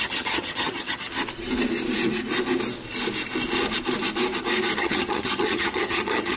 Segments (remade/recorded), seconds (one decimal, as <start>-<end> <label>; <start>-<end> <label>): 0.0-1.1 remade; 1.1-4.8 recorded; 4.8-6.4 remade